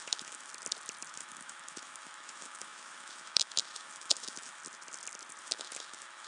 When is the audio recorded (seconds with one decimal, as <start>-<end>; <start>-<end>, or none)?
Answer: 0.5-1.1; 4.6-5.4